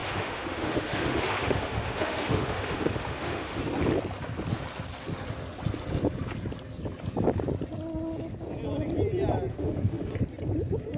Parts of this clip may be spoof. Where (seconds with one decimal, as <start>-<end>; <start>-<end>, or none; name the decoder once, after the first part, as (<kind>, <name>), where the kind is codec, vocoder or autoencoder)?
0.0-3.6 (autoencoder, DAC-VAE); 9.5-10.1

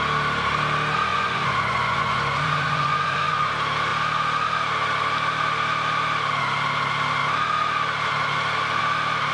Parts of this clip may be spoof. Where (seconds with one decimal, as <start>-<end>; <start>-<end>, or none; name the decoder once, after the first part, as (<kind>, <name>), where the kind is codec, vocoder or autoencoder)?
1.1-3.5 (vocoder, Vocos)

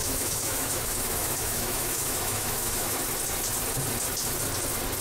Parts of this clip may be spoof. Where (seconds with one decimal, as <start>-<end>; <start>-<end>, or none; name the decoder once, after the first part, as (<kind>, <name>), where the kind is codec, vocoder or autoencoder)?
0.0-3.0 (autoencoder, DAC-VAE)

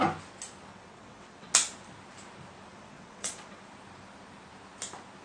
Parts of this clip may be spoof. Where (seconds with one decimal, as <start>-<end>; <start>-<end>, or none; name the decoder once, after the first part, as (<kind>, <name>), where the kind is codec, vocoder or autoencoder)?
0.7-1.5 (vocoder, WaveNeXt); 2.7-3.6

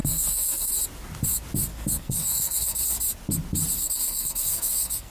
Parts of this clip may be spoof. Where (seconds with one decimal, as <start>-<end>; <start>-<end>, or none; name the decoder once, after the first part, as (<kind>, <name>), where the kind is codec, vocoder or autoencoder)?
0.0-0.7 (codec, SNAC); 1.7-2.8; 3.8-5.1

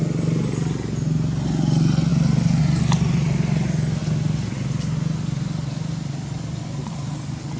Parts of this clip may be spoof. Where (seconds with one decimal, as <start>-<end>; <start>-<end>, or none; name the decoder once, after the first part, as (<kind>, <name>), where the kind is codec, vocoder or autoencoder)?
none

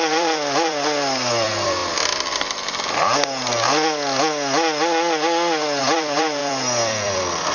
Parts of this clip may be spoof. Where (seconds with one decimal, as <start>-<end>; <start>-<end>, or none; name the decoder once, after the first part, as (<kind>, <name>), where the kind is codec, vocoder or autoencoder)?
0.0-1.8 (vocoder, BigVGAN v2); 5.8-7.5

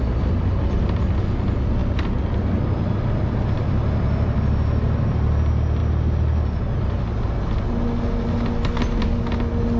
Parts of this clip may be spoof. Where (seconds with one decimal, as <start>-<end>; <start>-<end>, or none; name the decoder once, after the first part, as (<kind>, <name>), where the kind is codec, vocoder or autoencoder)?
1.8-4.4 (vocoder, BigVGAN v2)